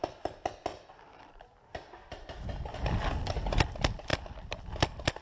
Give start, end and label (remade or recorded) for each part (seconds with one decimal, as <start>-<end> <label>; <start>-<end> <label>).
0.0-5.2 recorded